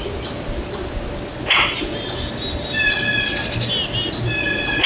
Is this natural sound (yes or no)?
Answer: yes